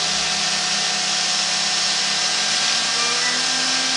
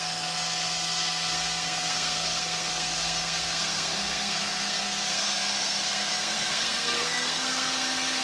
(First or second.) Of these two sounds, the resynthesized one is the second